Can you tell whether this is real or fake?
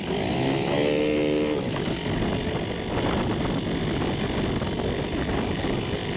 real